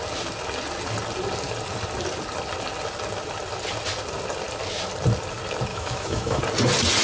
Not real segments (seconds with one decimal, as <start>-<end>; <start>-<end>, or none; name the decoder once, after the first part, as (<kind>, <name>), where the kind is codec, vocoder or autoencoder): 5.7-6.4 (autoencoder, DAC-VAE)